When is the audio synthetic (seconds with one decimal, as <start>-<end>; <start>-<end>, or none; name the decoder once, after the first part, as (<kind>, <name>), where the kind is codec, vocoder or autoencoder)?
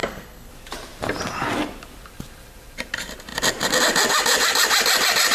0.0-0.5 (codec, SNAC)